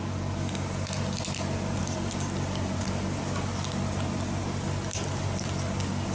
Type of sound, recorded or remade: recorded